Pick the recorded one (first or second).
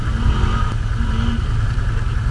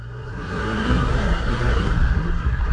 first